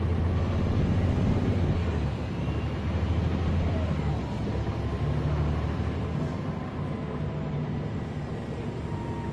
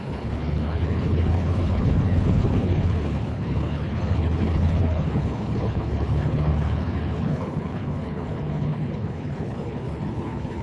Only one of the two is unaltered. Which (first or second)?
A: first